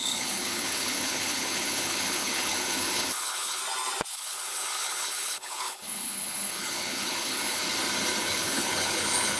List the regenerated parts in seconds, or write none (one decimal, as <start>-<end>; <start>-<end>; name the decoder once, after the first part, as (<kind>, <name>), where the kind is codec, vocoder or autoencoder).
0.0-3.6 (codec, HILCodec); 4.1-7.6; 8.2-9.4